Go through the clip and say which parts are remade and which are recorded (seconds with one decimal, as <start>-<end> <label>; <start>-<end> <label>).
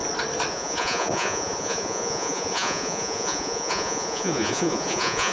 0.0-0.5 recorded; 0.5-5.3 remade